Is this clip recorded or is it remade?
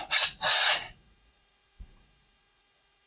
remade